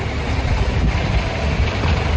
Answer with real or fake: fake